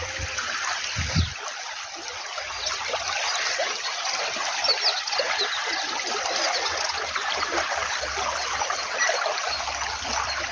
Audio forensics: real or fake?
real